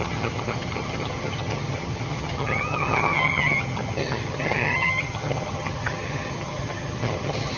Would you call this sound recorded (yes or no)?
no